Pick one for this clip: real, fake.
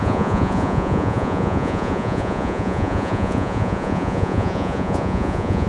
fake